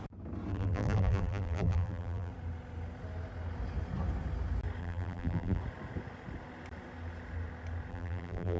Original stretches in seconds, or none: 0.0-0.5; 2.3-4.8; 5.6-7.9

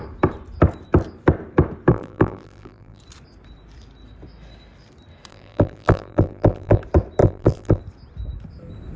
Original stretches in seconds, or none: 0.0-1.9; 3.0-5.3; 6.8-7.2; 7.8-9.0

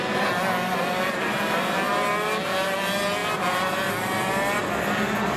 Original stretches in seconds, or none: 0.0-5.4

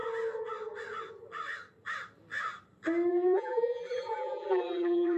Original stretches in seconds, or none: 0.0-3.1

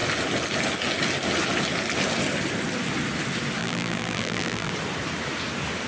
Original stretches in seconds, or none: 0.0-3.6; 4.7-5.9

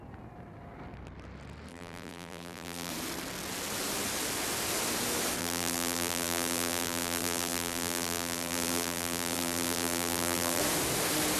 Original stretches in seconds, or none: 0.0-1.7; 2.9-5.4; 10.6-11.4